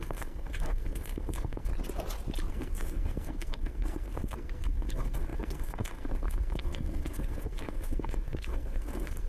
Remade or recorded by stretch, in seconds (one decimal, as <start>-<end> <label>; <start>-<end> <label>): 0.0-1.7 remade; 1.7-2.5 recorded; 2.5-9.3 remade